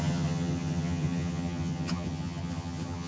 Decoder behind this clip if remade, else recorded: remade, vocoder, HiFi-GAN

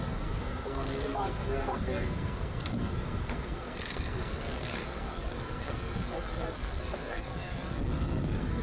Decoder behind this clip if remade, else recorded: remade, codec, SNAC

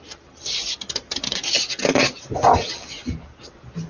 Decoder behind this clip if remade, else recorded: recorded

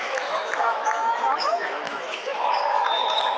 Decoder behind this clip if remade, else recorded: remade, autoencoder, DAC-VAE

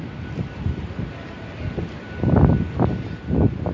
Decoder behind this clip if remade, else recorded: recorded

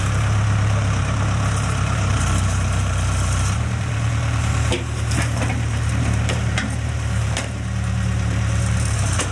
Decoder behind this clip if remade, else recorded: remade, vocoder, BigVGAN v2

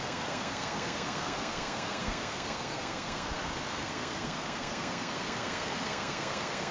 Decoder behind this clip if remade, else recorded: remade, codec, SNAC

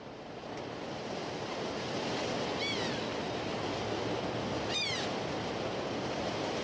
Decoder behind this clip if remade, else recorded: recorded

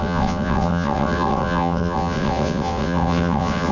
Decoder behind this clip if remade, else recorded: remade, vocoder, WaveNeXt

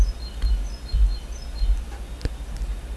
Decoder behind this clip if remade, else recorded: recorded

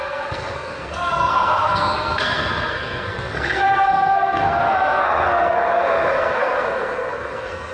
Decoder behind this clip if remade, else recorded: remade, codec, SNAC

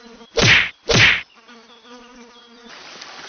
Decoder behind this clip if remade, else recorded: recorded